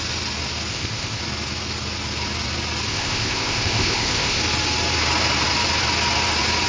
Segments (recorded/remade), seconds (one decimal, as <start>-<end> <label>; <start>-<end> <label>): 0.0-0.7 recorded; 0.7-1.2 remade; 1.2-2.9 recorded; 2.9-4.4 remade; 4.4-6.7 recorded